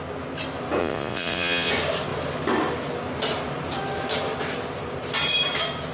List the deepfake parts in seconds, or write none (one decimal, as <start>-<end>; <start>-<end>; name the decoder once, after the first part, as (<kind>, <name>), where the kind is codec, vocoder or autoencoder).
0.8-1.7 (vocoder, Vocos)